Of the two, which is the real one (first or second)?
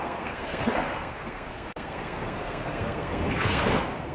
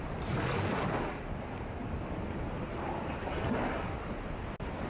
second